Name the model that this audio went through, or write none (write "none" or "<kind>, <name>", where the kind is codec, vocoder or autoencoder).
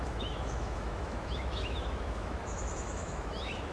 autoencoder, DAC-VAE